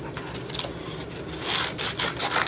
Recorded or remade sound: recorded